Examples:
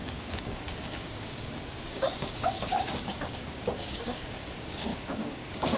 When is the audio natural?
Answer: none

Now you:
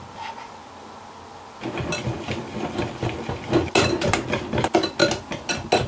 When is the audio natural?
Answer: 0.0-5.9